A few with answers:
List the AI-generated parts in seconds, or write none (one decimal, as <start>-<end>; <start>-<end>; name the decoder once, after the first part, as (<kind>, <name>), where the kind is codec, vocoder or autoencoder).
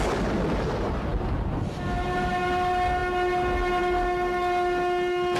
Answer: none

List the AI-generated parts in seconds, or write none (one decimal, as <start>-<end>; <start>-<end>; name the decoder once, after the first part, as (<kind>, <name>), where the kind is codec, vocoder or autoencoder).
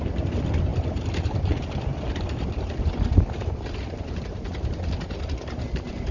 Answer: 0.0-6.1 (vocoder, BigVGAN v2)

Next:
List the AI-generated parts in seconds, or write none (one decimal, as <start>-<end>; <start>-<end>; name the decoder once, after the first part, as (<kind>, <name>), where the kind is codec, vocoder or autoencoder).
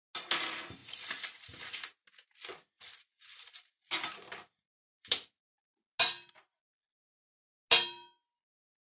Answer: none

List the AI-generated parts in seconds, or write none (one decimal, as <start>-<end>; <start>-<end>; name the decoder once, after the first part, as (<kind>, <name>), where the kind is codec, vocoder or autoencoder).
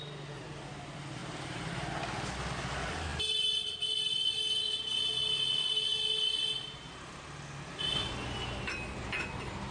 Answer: 1.2-1.9 (vocoder, BigVGAN v2)